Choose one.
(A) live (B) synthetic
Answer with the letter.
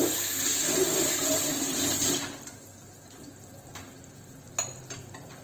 A